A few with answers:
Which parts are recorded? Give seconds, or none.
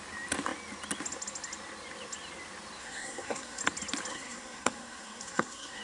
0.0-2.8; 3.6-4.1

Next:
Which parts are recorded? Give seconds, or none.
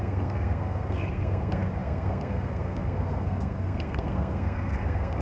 none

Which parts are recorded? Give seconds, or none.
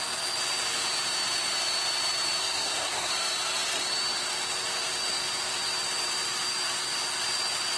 0.0-2.4; 3.1-7.8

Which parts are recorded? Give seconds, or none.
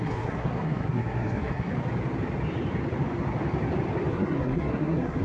1.7-4.1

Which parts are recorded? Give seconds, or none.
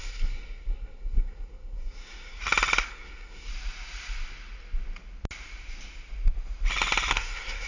2.4-2.9; 3.5-7.1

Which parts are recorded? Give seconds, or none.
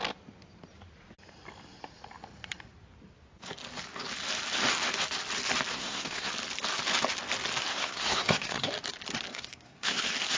0.0-5.7; 6.3-7.7; 8.7-9.3; 10.0-10.4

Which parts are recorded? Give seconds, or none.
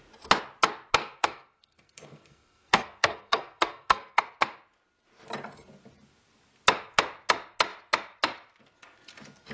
0.0-1.0; 4.2-9.5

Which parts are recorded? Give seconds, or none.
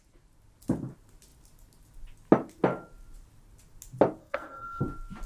0.0-4.2; 4.8-5.3